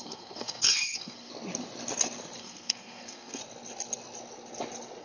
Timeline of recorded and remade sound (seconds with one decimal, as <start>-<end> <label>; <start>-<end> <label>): 0.0-1.3 remade; 1.3-2.4 recorded; 2.4-3.4 remade; 3.4-5.0 recorded